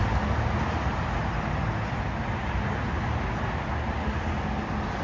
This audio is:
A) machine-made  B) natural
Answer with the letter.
B